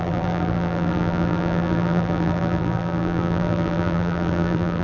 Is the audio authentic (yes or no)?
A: no